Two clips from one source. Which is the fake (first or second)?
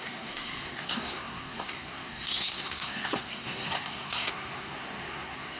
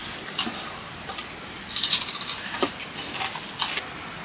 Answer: first